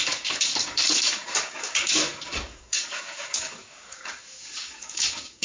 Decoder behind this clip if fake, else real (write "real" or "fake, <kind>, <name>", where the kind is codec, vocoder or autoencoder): fake, codec, DAC